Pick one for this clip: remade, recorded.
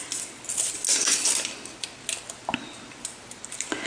recorded